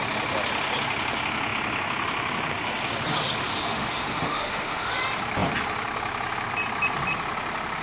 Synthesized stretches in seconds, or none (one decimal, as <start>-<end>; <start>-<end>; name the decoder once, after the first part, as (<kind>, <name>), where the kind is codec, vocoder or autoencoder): 3.5-4.9 (autoencoder, DAC-VAE)